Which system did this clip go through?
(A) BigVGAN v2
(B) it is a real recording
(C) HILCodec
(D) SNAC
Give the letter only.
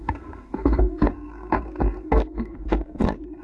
D